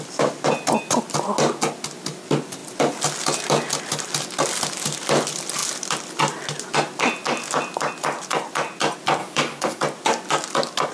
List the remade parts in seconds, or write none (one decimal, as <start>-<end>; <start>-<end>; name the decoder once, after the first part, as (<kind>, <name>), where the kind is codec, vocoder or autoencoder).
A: 9.2-9.8 (codec, DAC)